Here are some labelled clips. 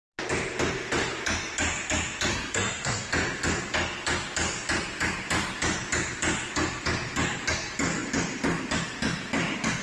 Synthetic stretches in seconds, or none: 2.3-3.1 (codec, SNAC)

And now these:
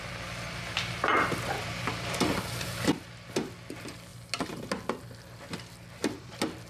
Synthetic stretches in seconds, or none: none

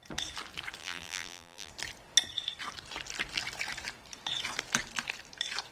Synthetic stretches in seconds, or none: 0.8-1.7 (vocoder, BigVGAN v2)